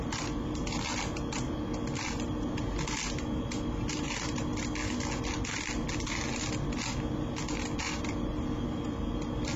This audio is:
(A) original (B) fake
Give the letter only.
A